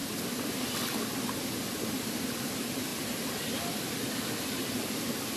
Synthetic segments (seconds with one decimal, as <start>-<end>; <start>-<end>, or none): none